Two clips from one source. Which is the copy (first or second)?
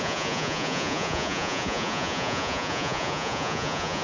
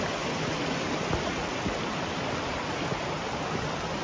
first